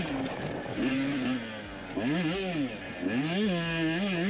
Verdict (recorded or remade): recorded